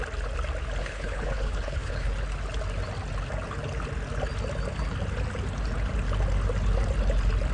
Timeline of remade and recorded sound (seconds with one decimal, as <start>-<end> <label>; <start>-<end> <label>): 0.0-0.8 recorded; 0.8-2.1 remade; 2.1-7.5 recorded